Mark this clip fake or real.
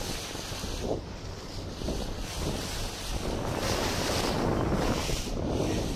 real